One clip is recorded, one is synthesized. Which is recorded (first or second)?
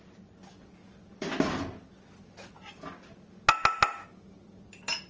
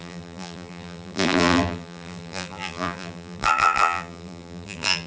first